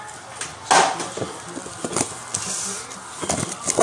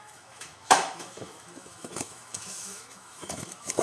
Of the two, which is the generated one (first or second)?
second